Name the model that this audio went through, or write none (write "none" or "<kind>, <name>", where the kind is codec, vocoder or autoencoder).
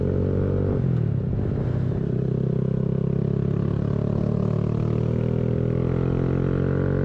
none